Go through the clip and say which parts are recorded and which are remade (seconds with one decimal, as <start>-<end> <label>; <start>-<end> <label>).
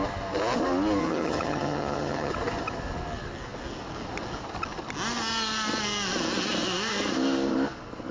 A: 0.0-1.0 recorded; 1.0-2.3 remade; 2.3-8.1 recorded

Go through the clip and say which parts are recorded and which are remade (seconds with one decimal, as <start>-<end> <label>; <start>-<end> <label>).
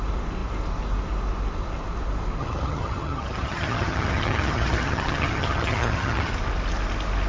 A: 0.0-2.4 recorded; 2.4-6.3 remade; 6.3-7.3 recorded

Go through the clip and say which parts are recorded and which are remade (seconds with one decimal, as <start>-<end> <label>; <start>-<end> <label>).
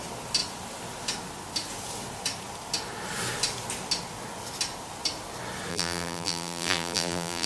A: 0.0-5.7 recorded; 5.7-7.5 remade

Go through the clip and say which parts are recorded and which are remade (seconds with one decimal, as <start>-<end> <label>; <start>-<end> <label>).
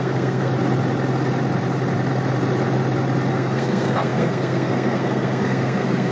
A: 0.0-0.5 remade; 0.5-3.3 recorded; 3.3-6.1 remade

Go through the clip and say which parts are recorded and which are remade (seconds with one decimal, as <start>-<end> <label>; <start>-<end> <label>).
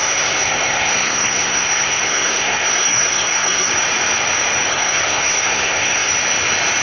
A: 0.0-3.7 remade; 3.7-4.7 recorded; 4.7-6.1 remade; 6.1-6.8 recorded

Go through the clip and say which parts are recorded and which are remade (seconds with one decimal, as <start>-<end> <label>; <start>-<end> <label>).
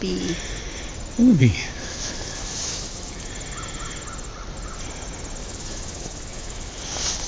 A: 0.0-1.4 recorded; 1.4-3.3 remade; 3.3-5.4 recorded; 5.4-6.8 remade; 6.8-7.3 recorded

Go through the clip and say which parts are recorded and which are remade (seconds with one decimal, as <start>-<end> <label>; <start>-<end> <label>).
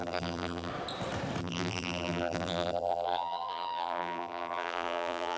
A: 0.0-0.7 remade; 0.7-1.4 recorded; 1.4-5.4 remade